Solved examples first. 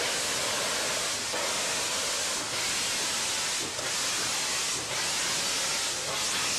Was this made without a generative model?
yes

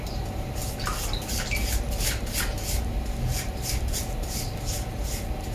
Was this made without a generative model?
yes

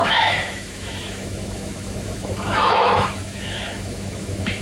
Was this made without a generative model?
no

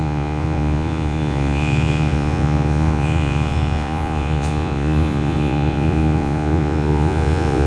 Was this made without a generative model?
no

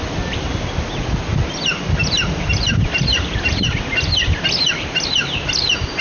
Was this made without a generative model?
yes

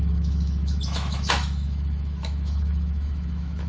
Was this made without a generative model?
no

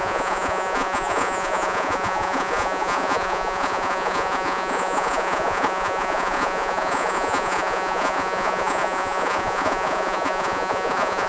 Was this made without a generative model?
no